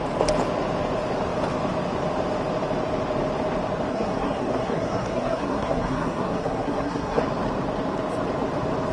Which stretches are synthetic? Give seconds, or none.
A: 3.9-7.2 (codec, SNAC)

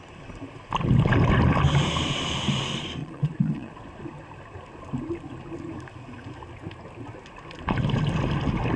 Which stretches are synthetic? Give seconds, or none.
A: 3.0-3.7 (vocoder, Vocos)

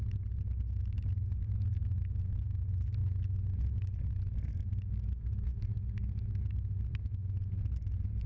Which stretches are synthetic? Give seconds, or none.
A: none

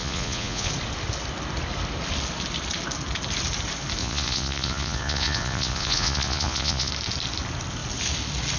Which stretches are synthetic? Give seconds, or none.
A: 0.0-0.7 (vocoder, Vocos); 4.0-6.9

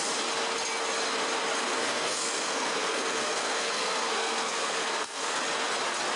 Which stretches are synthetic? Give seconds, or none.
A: 1.7-5.4 (codec, SNAC)